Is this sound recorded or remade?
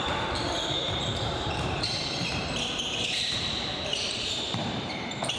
remade